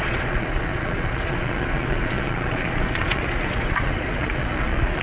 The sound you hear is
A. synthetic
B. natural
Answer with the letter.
A